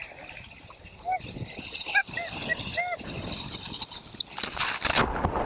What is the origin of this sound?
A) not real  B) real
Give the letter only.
B